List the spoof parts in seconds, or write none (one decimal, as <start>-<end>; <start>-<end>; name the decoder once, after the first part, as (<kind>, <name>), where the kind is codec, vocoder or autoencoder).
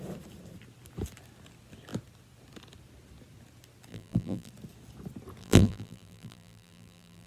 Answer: 3.9-4.5 (vocoder, BigVGAN v2); 5.4-7.3